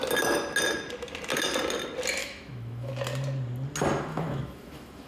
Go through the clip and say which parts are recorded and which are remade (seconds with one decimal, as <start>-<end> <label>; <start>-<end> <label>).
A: 0.0-2.2 recorded; 2.2-2.9 remade; 2.9-4.1 recorded; 4.1-5.1 remade